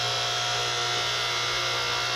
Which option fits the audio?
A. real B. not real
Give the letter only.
A